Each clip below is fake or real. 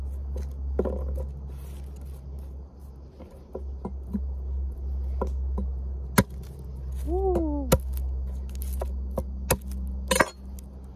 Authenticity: real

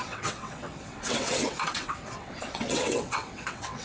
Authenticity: fake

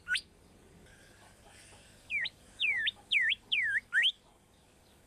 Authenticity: fake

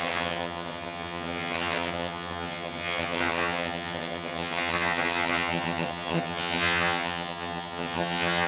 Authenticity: fake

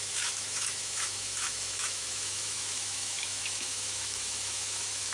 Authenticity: fake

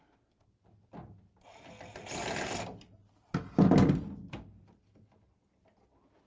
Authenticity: real